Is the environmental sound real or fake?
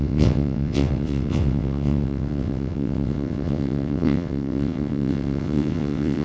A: fake